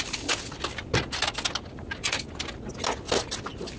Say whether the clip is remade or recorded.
recorded